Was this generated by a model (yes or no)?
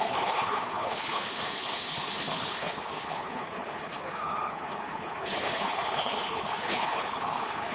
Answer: yes